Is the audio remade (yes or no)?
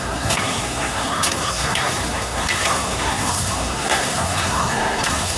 yes